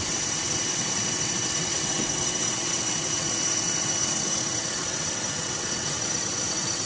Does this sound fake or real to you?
fake